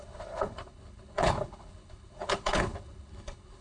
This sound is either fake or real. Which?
fake